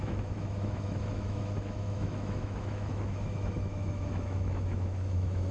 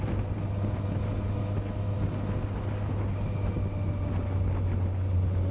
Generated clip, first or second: first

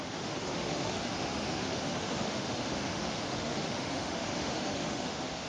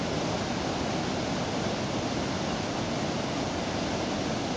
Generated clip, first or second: first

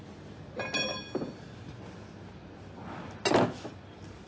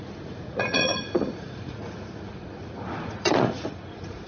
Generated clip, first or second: second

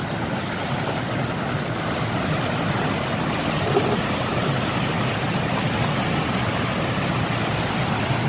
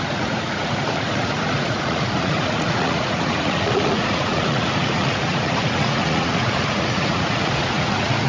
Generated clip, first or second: second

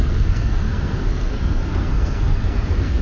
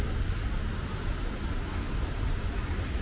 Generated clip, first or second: first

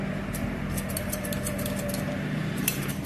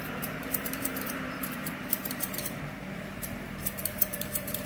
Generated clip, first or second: second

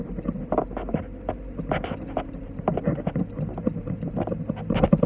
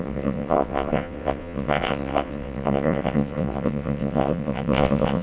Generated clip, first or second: second